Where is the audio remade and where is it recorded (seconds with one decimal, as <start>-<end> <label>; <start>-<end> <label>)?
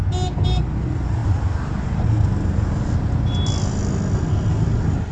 0.0-5.1 recorded